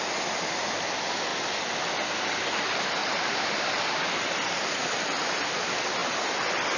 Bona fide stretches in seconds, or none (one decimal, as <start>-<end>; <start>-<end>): 0.0-3.0; 5.2-6.8